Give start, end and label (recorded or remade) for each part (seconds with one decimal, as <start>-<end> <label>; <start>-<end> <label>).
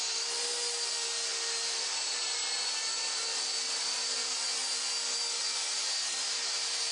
0.0-6.9 recorded